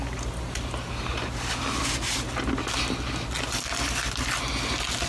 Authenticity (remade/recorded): recorded